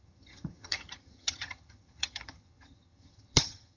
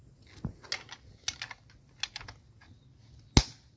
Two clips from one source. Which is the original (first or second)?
second